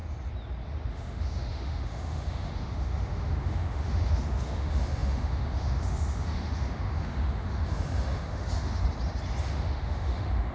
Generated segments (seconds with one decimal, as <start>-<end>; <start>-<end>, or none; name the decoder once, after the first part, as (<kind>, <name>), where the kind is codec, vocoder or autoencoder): 0.9-8.8 (autoencoder, DAC-VAE); 9.4-10.5